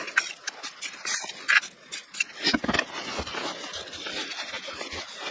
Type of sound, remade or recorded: recorded